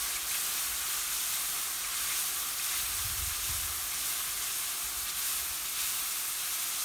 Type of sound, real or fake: real